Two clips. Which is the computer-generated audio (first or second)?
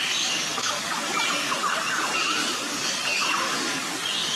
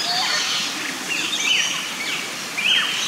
first